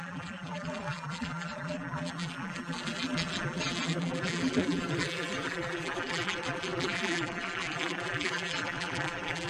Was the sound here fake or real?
fake